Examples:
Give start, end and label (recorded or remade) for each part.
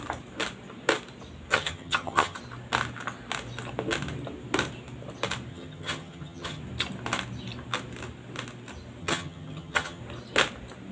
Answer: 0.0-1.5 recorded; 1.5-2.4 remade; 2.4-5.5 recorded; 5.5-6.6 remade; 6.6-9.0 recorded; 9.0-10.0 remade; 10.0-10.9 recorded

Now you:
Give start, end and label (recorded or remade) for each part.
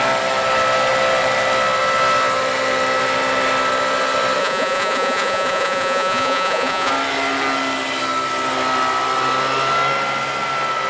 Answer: 0.0-4.4 recorded; 4.4-6.9 remade; 6.9-10.9 recorded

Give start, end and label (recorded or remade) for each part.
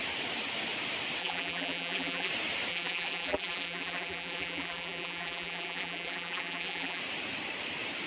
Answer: 0.0-1.2 recorded; 1.2-2.3 remade; 2.3-2.7 recorded; 2.7-7.0 remade; 7.0-8.1 recorded